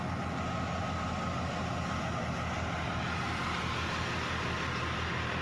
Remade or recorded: recorded